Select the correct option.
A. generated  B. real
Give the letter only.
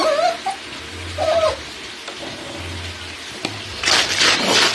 B